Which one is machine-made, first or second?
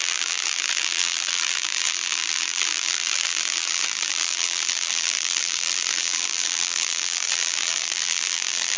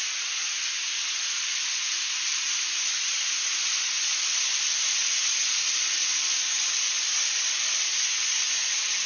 first